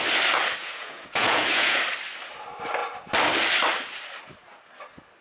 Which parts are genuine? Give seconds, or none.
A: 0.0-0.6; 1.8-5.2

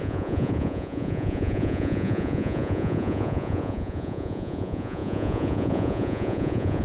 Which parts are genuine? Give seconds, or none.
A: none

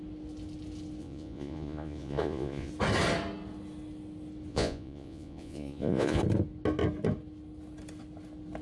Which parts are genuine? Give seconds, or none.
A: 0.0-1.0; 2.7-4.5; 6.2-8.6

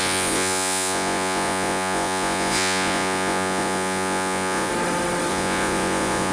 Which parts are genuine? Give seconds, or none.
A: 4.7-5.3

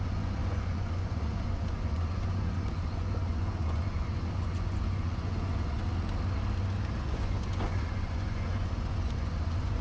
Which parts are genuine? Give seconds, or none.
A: 5.8-7.0